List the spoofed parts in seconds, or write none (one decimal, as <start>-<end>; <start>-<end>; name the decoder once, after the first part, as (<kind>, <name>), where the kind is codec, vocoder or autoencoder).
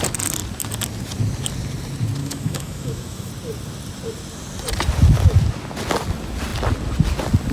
2.2-3.3 (autoencoder, DAC-VAE)